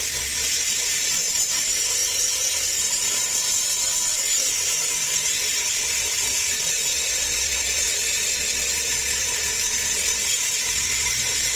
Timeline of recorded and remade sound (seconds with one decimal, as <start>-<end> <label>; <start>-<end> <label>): 0.0-11.6 remade